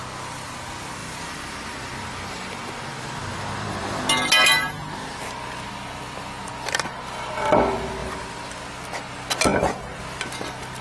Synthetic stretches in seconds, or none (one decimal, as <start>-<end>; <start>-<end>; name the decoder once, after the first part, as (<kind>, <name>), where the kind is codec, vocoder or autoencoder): 1.0-4.0 (vocoder, BigVGAN v2); 8.0-8.6